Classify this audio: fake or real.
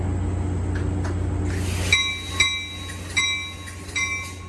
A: real